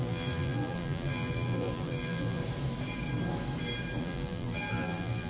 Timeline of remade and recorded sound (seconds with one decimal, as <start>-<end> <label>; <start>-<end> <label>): 0.0-2.4 remade; 2.4-4.0 recorded; 4.0-5.3 remade